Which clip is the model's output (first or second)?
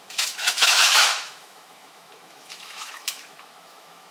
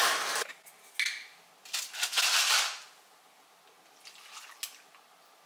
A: first